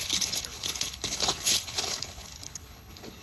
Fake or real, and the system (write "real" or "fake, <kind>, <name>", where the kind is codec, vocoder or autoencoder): fake, codec, HILCodec